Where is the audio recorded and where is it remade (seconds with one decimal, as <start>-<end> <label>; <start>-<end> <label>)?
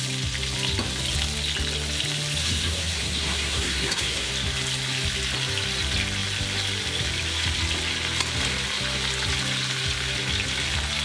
0.0-2.4 recorded; 2.4-4.3 remade; 4.3-11.0 recorded